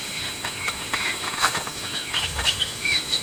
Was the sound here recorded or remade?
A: remade